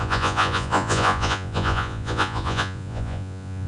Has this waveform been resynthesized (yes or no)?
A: yes